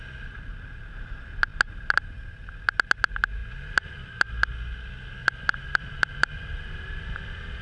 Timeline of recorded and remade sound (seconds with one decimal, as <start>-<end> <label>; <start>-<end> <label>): 0.0-5.2 recorded; 5.2-6.9 remade; 6.9-7.6 recorded